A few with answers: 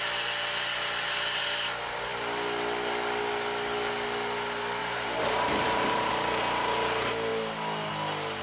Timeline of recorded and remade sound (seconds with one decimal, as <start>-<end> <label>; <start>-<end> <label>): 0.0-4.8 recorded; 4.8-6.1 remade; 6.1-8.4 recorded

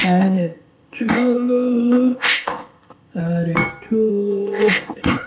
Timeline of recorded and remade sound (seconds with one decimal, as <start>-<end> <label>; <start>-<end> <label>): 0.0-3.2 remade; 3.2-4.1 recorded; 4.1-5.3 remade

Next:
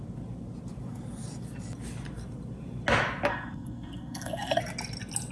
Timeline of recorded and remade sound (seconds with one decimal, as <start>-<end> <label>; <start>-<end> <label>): 0.0-3.3 recorded; 3.3-4.6 remade; 4.6-5.3 recorded

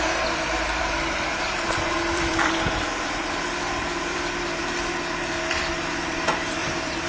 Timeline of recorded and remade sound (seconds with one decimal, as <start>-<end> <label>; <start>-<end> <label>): 0.0-4.6 remade; 4.6-5.5 recorded; 5.5-7.1 remade